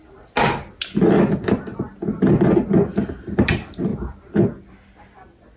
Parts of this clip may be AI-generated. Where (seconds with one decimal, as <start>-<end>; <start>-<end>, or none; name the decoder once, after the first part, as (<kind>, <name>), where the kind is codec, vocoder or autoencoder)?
none

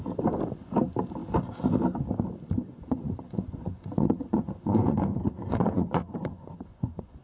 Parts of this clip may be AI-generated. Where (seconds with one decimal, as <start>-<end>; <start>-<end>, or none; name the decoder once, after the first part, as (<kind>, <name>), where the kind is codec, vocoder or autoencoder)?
2.7-7.2 (vocoder, Vocos)

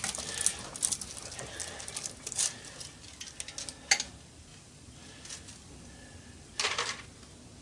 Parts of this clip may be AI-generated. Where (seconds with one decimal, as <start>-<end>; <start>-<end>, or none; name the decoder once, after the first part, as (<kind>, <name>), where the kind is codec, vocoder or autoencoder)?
4.5-6.8 (vocoder, BigVGAN v2)